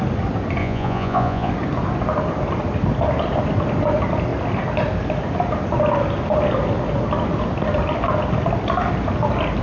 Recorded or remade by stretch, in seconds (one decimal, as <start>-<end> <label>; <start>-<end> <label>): 0.0-0.6 recorded; 0.6-1.5 remade; 1.5-9.6 recorded